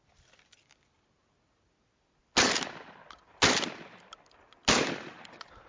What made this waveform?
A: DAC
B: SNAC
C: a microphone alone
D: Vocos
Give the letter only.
C